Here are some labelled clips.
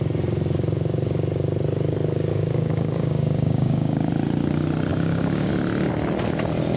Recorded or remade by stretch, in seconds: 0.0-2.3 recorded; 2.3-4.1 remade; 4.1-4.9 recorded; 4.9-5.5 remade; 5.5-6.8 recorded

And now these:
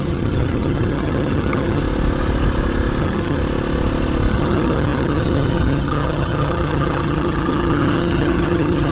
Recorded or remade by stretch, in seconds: 0.0-1.8 remade; 1.8-3.0 recorded; 3.0-3.4 remade; 3.4-4.3 recorded; 4.3-8.9 remade

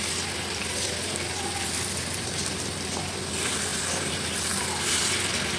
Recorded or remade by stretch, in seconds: 0.0-5.6 recorded